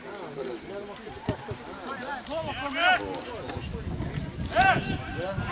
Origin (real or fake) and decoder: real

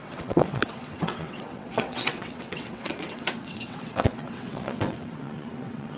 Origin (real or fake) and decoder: fake, vocoder, WaveNeXt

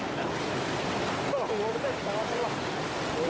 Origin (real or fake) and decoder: real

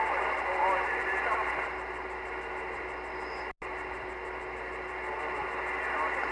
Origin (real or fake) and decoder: real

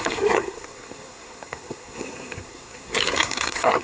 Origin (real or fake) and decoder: fake, codec, SNAC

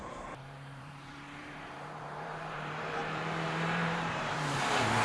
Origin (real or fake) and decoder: fake, vocoder, BigVGAN v2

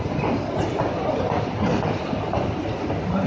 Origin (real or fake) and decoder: real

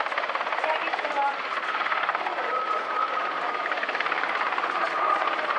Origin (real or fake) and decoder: real